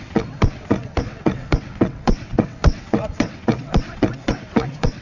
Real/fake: fake